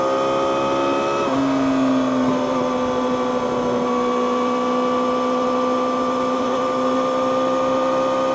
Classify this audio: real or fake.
real